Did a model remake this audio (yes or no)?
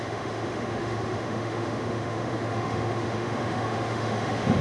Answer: yes